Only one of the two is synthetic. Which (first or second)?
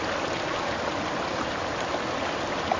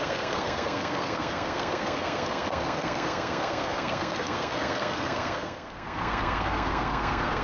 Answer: second